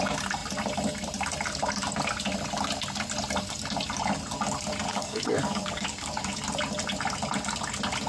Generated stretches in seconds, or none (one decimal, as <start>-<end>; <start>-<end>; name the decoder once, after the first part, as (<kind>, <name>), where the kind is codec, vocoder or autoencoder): 4.9-6.2 (codec, DAC)